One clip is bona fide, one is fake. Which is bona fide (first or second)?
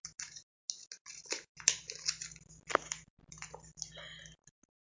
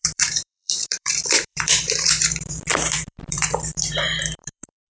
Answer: first